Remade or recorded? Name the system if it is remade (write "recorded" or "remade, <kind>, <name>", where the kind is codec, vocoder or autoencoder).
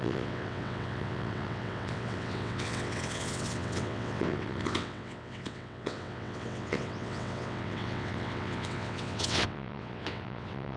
remade, vocoder, WaveNeXt